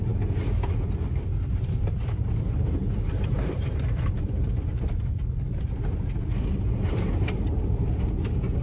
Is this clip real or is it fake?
fake